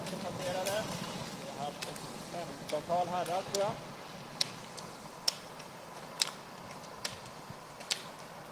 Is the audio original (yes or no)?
yes